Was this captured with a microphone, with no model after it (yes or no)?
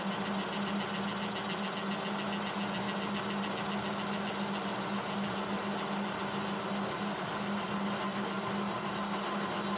yes